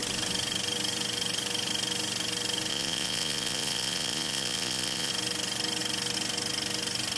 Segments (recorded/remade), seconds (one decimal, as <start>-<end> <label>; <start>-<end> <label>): 0.0-2.7 recorded; 2.7-5.1 remade; 5.1-7.2 recorded